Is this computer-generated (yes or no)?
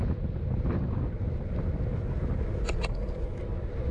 no